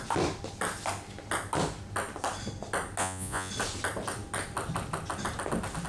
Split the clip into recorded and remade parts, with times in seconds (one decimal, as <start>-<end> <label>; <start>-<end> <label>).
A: 0.0-3.0 recorded; 3.0-3.5 remade; 3.5-5.9 recorded